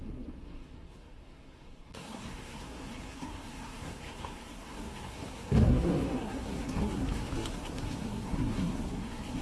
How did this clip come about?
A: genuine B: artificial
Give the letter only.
B